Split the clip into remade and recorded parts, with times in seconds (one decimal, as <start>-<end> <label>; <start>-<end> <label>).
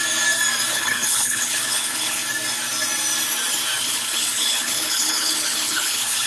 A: 0.0-0.7 recorded; 0.7-2.2 remade; 2.2-3.8 recorded; 3.8-6.3 remade